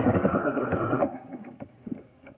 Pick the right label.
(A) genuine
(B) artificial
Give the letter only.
B